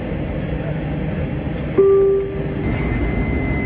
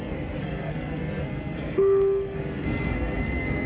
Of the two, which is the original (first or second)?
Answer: first